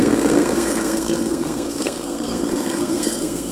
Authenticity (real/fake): fake